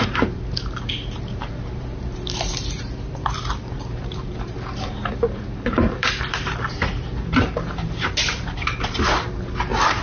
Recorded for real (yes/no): no